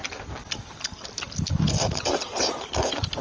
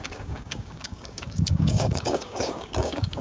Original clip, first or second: first